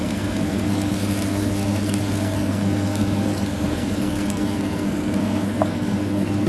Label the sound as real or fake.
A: fake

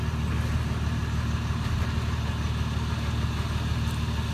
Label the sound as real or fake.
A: real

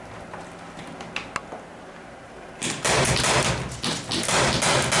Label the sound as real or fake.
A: real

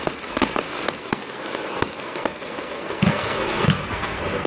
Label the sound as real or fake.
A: fake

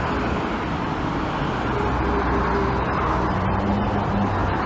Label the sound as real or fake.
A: real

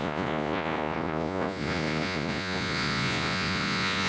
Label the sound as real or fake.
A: fake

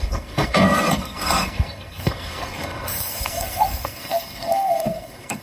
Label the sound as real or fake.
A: fake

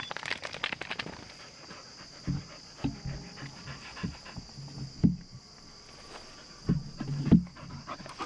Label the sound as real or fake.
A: real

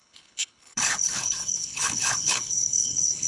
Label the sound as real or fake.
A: fake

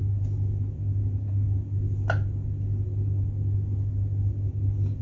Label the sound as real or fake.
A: real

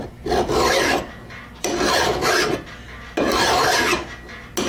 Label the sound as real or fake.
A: real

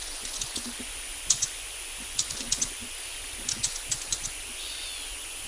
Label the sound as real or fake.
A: fake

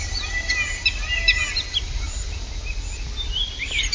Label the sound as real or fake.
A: real